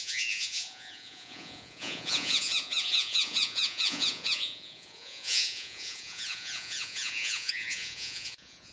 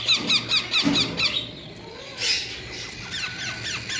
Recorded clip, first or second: second